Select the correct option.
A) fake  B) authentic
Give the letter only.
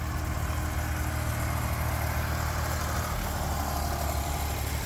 B